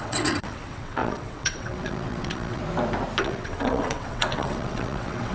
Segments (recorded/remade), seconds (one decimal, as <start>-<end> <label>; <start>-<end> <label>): 0.0-2.6 remade; 2.6-3.2 recorded; 3.2-5.3 remade